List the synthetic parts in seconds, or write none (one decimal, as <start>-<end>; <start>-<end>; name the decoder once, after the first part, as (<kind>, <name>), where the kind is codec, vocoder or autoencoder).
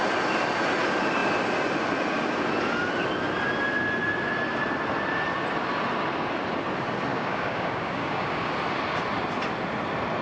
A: 7.1-8.5 (codec, DAC)